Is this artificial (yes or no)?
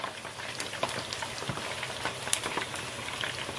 no